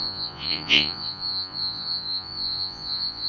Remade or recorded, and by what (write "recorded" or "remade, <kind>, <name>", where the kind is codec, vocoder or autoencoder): remade, vocoder, Vocos